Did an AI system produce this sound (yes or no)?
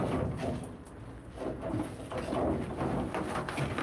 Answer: no